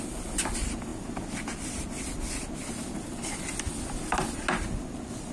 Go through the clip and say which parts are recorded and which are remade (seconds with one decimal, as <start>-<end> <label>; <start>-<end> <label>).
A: 0.0-5.3 recorded